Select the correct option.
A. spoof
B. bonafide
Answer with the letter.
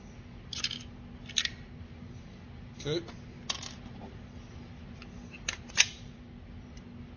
B